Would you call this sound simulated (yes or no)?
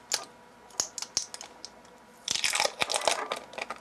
no